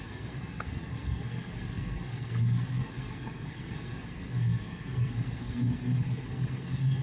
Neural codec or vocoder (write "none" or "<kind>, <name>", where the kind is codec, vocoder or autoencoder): codec, SNAC